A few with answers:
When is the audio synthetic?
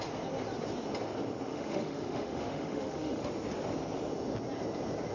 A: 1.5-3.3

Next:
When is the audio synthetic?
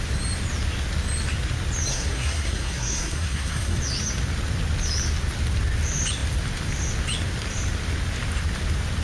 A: 1.9-3.8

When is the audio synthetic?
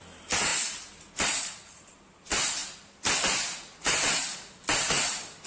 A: none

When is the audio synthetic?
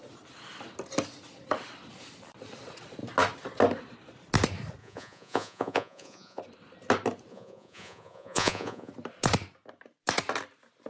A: 4.8-6.4; 7.3-8.9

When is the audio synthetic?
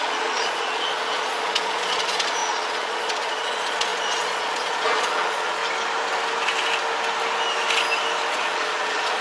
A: 0.0-5.6; 8.3-9.2